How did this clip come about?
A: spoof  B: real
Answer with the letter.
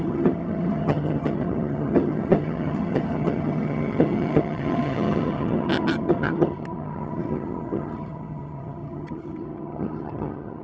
A